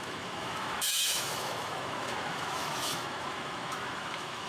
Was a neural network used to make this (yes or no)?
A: yes